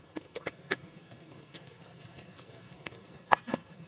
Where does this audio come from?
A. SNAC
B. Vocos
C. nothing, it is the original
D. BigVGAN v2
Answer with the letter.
A